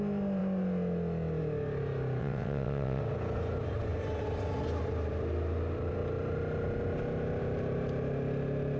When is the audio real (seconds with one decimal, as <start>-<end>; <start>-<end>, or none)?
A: 0.0-2.2; 3.0-8.8